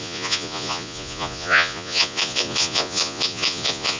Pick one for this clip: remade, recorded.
remade